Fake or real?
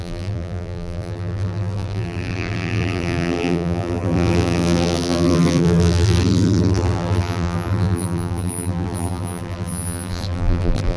fake